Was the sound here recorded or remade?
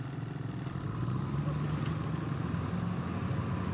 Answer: recorded